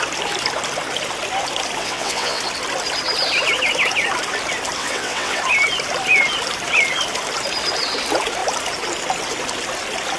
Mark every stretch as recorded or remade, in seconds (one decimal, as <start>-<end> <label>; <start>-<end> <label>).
0.0-1.8 recorded; 1.8-2.4 remade; 2.4-4.8 recorded; 4.8-5.4 remade; 5.4-10.2 recorded